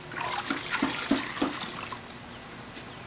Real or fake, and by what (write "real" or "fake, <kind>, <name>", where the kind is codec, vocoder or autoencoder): real